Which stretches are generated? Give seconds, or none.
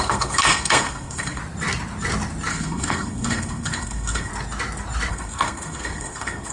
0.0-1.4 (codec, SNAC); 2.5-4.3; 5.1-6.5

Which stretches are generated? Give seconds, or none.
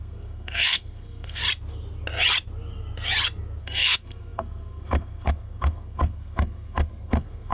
0.0-1.4 (codec, SNAC); 3.6-7.5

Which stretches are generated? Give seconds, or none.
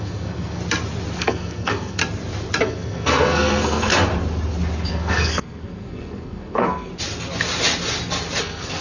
0.0-0.6 (codec, SNAC); 1.2-2.0; 2.6-3.9; 4.9-6.9; 8.4-8.8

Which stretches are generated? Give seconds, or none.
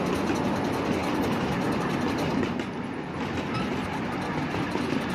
none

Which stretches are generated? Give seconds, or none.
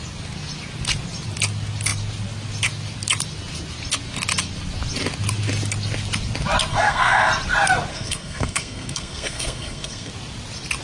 6.7-7.3 (codec, SNAC); 7.9-10.1